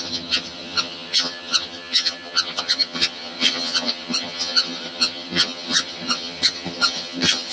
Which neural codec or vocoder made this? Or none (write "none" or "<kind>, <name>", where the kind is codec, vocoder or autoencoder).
vocoder, HiFi-GAN